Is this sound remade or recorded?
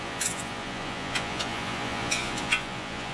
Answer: remade